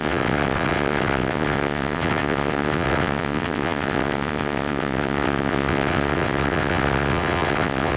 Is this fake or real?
fake